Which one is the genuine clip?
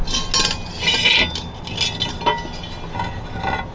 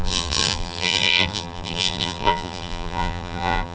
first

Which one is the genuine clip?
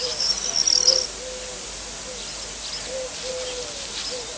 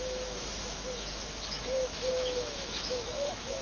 first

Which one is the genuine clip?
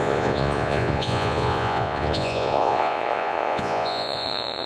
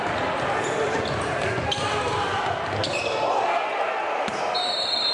second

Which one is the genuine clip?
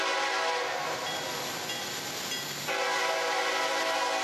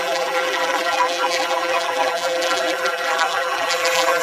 first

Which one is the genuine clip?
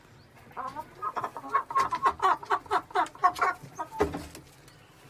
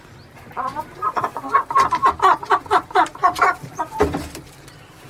first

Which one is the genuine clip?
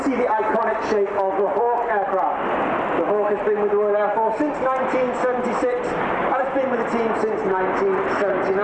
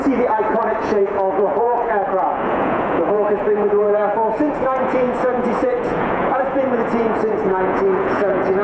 first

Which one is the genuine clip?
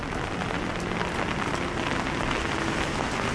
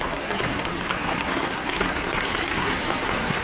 first